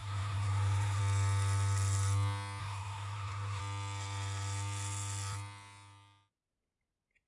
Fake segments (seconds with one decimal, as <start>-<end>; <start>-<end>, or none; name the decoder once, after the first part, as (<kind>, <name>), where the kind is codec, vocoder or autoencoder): 0.0-1.0 (codec, SNAC); 2.6-3.6